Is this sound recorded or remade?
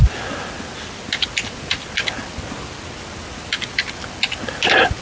recorded